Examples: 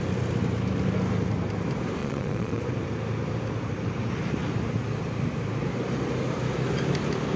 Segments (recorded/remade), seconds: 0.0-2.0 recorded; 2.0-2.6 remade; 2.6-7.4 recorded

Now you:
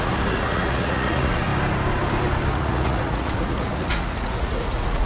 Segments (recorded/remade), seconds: 0.0-1.5 remade; 1.5-2.5 recorded; 2.5-5.1 remade

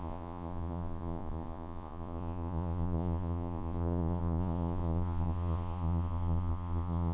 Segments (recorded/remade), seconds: 0.0-7.1 remade